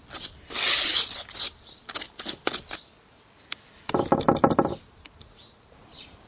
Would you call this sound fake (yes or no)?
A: no